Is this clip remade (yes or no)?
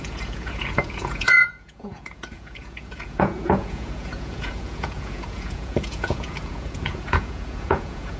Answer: yes